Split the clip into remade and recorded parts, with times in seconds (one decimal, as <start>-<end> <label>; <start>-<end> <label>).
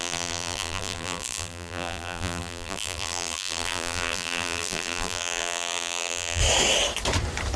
0.0-6.4 remade; 6.4-7.6 recorded